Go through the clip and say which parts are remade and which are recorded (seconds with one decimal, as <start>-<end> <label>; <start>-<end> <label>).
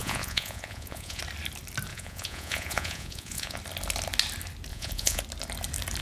0.0-1.2 remade; 1.2-1.9 recorded; 1.9-3.6 remade; 3.6-4.7 recorded; 4.7-5.2 remade; 5.2-6.0 recorded